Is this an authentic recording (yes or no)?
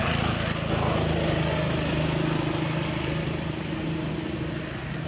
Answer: yes